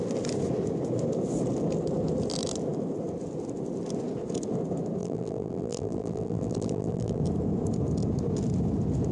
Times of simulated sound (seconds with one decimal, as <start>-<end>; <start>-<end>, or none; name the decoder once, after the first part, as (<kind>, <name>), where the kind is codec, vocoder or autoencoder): 5.0-7.2 (vocoder, BigVGAN v2)